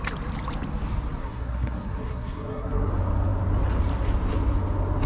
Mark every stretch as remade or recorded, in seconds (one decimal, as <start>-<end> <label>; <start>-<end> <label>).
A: 0.0-1.2 recorded; 1.2-2.9 remade; 2.9-5.1 recorded